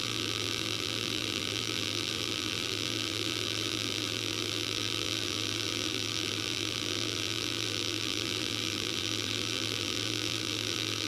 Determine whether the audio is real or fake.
fake